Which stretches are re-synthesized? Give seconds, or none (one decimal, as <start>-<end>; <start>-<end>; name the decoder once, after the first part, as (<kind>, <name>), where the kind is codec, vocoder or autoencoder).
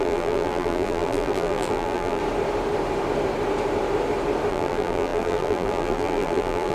0.0-2.2 (vocoder, BigVGAN v2); 4.5-6.7